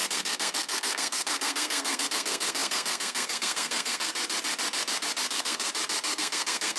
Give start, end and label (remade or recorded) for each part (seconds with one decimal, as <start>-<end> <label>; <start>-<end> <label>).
0.0-4.1 remade; 4.1-5.3 recorded; 5.3-5.7 remade; 5.7-6.2 recorded; 6.2-6.8 remade